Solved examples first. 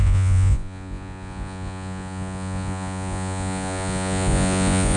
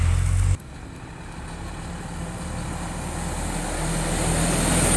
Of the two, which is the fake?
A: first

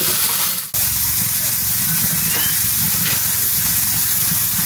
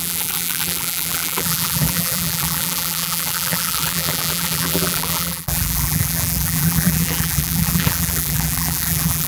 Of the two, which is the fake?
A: second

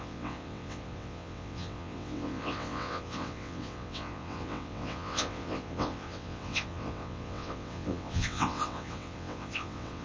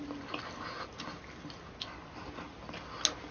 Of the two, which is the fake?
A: first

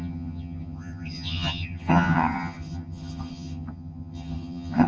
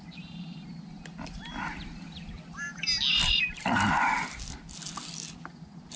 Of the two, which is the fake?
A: first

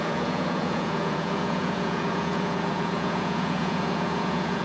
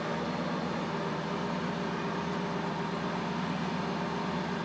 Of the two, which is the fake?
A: first